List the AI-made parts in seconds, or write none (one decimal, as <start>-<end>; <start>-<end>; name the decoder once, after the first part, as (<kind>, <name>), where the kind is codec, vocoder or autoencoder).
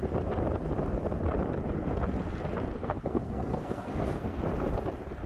2.8-4.4 (codec, SNAC)